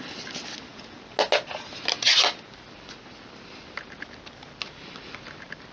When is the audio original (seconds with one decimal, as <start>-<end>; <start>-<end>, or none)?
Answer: 0.0-5.7